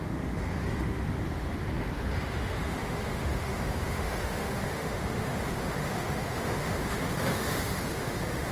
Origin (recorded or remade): remade